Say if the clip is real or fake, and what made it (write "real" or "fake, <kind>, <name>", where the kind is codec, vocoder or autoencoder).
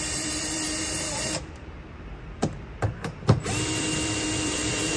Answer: fake, vocoder, BigVGAN v2